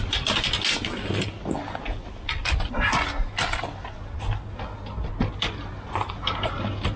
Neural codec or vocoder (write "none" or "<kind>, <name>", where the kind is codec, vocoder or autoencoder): none